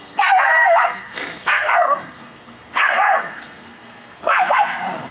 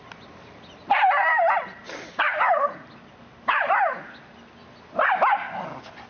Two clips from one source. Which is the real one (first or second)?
second